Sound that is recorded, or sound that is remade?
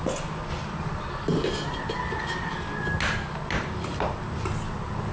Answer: recorded